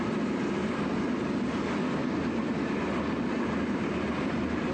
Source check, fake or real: real